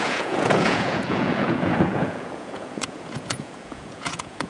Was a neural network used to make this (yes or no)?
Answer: yes